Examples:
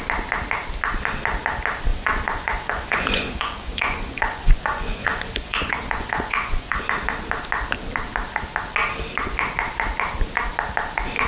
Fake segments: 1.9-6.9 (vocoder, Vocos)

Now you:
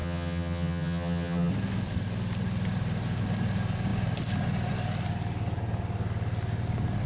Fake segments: 0.0-1.5 (vocoder, HiFi-GAN)

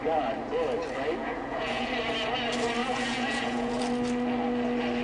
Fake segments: 1.2-1.9 (vocoder, Vocos); 2.8-3.8

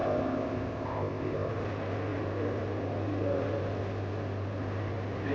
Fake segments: 0.0-1.5 (codec, ZipCodec)

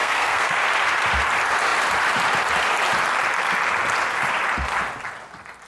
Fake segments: 0.0-0.7 (codec, SNAC)

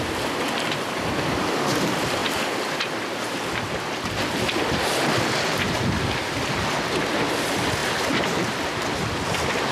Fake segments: none